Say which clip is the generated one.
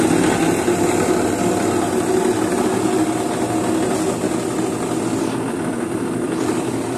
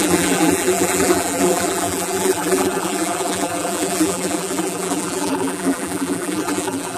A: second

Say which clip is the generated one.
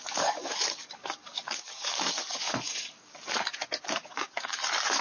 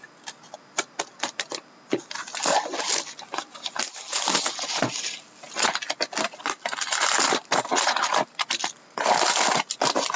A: first